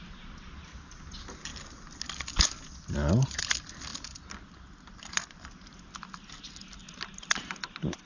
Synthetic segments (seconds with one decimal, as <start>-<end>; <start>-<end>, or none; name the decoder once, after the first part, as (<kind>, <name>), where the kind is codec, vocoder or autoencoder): none